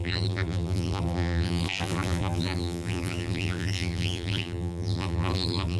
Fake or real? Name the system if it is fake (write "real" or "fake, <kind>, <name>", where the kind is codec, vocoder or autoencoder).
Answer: fake, vocoder, BigVGAN v2